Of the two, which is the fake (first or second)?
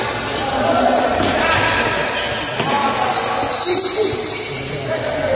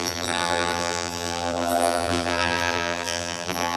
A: second